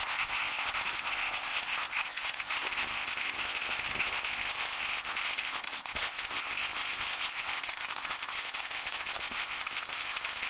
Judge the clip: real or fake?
fake